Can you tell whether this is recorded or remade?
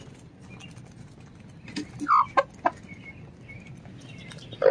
recorded